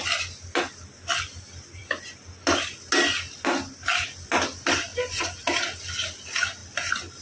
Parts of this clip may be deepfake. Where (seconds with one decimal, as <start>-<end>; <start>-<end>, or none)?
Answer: none